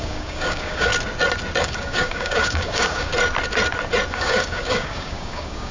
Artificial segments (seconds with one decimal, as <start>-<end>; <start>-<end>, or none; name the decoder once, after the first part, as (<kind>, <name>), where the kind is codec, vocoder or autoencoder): 0.0-0.9 (codec, DAC); 1.6-3.1; 4.1-5.7